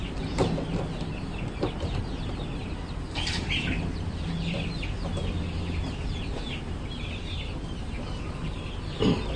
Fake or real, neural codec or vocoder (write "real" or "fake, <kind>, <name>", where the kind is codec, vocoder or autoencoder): real